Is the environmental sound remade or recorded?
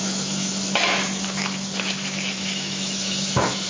remade